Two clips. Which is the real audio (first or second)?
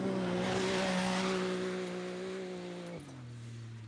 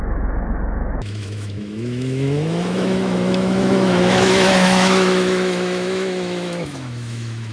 first